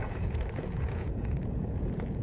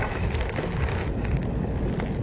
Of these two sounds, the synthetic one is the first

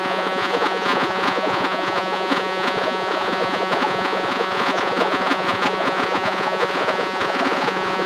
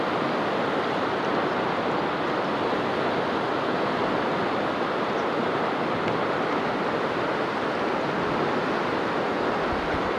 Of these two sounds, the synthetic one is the first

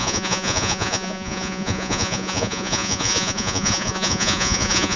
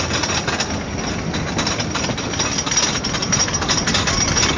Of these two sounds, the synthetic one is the first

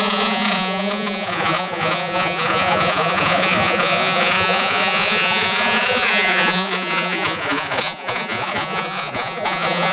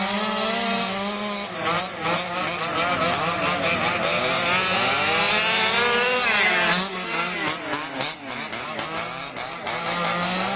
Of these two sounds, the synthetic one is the first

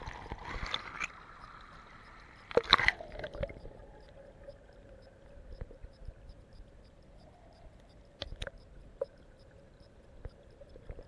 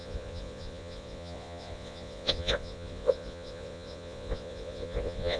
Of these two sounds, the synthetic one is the second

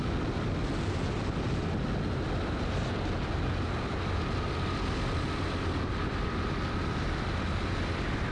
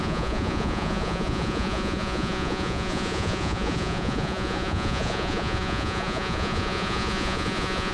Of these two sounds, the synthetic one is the second